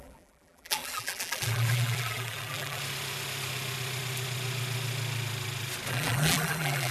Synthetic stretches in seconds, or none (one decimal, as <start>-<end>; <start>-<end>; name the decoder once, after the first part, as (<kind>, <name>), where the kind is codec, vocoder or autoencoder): 0.0-2.8 (vocoder, BigVGAN v2); 5.9-6.9